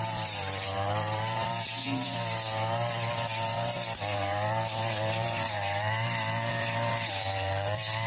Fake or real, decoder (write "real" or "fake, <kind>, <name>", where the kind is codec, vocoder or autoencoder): fake, vocoder, BigVGAN v2